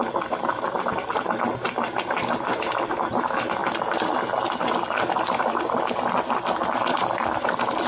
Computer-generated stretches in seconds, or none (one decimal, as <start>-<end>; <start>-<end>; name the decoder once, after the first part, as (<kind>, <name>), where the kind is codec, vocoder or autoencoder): none